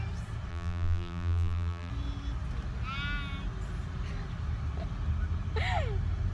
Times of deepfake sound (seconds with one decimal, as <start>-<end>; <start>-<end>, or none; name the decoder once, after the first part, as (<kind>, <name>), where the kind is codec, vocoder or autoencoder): 0.5-1.9 (vocoder, BigVGAN v2)